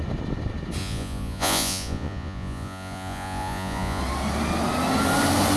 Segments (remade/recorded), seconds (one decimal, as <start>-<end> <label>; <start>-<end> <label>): 0.0-0.8 recorded; 0.8-4.0 remade; 4.0-5.6 recorded